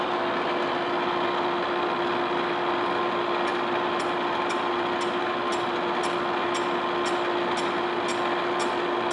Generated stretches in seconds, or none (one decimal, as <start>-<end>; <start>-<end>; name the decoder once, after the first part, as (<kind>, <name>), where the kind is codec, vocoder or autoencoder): none